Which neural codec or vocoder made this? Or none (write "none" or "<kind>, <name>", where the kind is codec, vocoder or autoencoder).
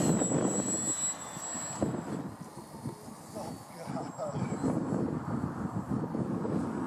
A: none